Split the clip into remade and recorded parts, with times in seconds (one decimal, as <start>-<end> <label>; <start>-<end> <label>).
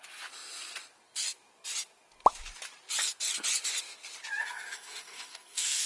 0.0-4.4 recorded; 4.4-5.9 remade